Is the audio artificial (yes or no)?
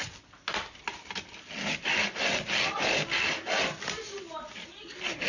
no